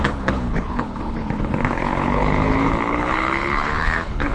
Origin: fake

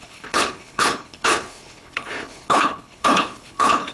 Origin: fake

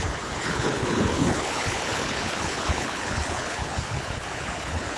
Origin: fake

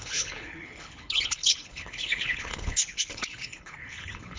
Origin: fake